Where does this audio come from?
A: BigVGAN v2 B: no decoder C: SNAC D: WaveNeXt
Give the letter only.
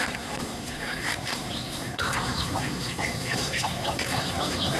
C